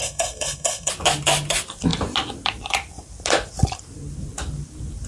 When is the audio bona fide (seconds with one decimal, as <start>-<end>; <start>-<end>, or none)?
0.9-5.1